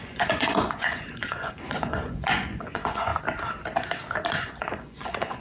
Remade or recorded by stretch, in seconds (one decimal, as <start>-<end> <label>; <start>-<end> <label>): 0.0-3.1 remade; 3.1-4.3 recorded; 4.3-5.4 remade